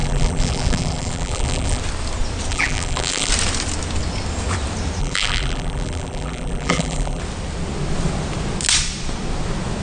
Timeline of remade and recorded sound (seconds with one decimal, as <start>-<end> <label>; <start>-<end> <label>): 0.0-1.8 remade; 1.8-2.5 recorded; 2.5-3.3 remade; 3.3-5.0 recorded; 5.0-7.2 remade; 7.2-9.8 recorded